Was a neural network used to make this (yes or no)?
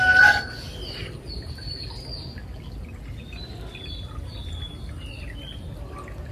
no